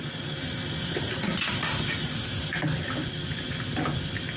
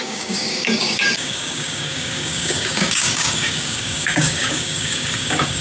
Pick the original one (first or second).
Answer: first